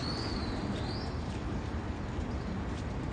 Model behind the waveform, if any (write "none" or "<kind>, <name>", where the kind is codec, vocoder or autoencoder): none